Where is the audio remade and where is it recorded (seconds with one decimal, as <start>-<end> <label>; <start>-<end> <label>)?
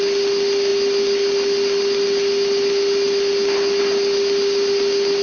0.0-5.2 recorded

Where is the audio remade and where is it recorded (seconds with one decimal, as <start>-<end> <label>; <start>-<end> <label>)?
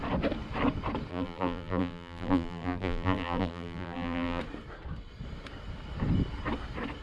0.0-1.1 recorded; 1.1-4.4 remade; 4.4-7.0 recorded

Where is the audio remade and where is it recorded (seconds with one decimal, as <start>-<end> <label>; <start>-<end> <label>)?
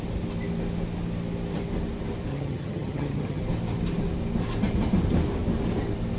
0.0-2.3 recorded; 2.3-3.4 remade; 3.4-6.2 recorded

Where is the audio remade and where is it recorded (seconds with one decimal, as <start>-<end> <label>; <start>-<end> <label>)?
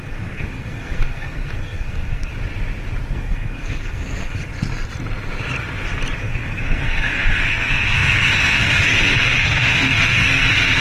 0.0-2.3 remade; 2.3-3.1 recorded; 3.1-4.5 remade; 4.5-6.2 recorded; 6.2-10.8 remade